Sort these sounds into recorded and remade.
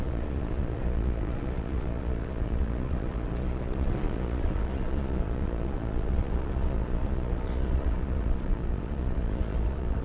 remade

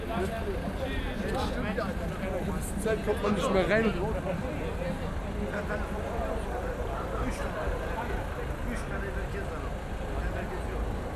recorded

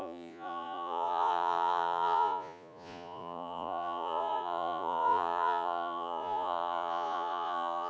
remade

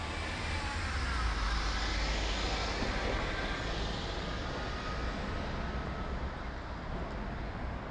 recorded